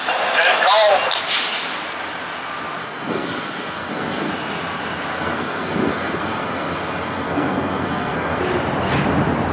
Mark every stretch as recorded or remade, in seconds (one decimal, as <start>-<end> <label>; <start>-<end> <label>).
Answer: 0.0-2.8 recorded; 2.8-4.3 remade; 4.3-5.1 recorded; 5.1-8.4 remade; 8.4-9.5 recorded